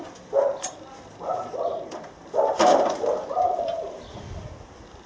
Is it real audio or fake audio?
real